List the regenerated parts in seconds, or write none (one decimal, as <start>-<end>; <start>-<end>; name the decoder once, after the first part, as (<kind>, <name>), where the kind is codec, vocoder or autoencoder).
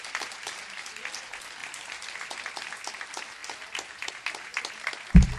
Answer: 1.6-2.4 (vocoder, BigVGAN v2); 3.4-4.1